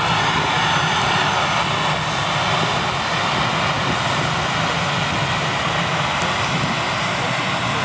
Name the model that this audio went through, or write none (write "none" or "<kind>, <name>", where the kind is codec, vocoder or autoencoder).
none